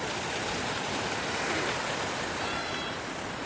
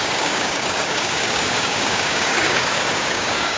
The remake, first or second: second